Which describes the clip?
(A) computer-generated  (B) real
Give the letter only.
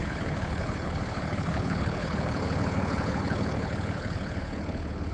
A